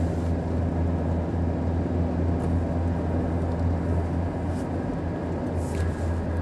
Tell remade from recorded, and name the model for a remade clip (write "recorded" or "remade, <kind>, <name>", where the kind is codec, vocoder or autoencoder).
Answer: recorded